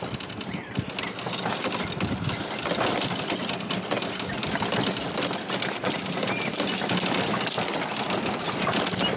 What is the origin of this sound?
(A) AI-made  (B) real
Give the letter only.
B